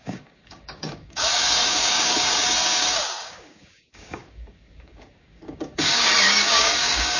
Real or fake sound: fake